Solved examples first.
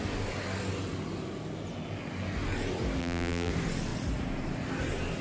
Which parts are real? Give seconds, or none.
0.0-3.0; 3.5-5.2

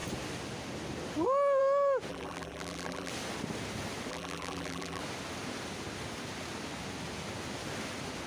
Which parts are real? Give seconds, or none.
0.0-2.1; 3.1-4.1; 5.0-8.3

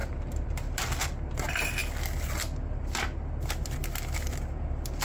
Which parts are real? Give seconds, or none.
0.8-5.0

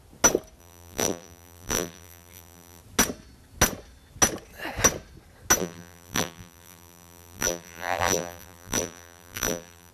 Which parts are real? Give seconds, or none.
0.0-0.6; 2.8-5.6

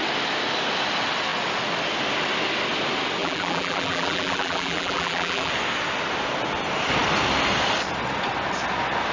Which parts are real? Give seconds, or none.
0.0-3.2; 5.5-9.1

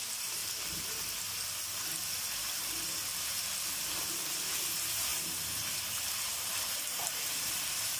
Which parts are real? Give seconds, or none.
0.4-4.6

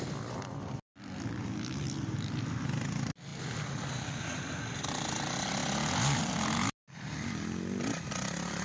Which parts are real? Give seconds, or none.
0.0-8.6